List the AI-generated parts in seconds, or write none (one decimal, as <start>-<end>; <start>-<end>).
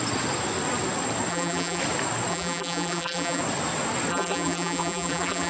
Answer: 1.3-1.8; 2.3-3.4; 4.1-5.5